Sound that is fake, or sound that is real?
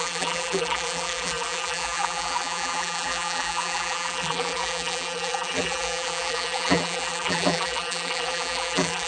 fake